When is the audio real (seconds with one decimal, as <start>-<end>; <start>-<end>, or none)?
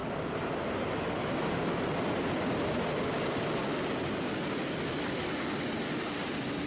0.0-6.7